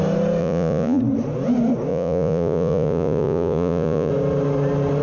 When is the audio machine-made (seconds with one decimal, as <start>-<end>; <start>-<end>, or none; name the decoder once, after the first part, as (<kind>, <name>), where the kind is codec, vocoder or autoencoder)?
0.4-1.0 (vocoder, Vocos); 1.9-4.1